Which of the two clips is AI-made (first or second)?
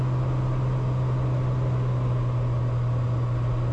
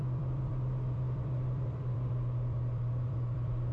second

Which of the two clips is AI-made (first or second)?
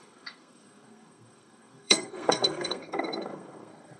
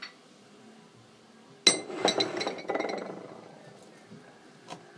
first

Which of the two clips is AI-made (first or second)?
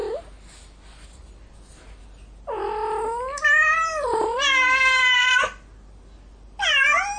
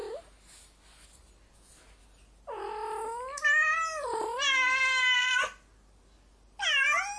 first